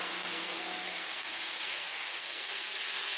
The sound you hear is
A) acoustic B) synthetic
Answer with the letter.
B